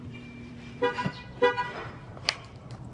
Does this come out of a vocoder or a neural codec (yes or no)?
yes